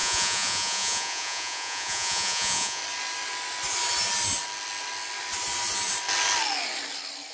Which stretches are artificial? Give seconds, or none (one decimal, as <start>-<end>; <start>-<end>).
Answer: 0.0-2.8